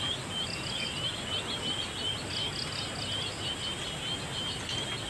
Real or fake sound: real